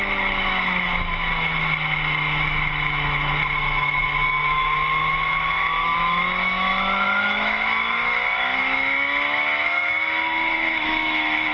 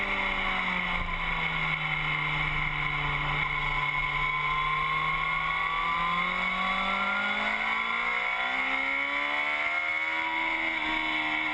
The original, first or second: second